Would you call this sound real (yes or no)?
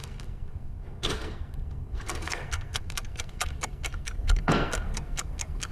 no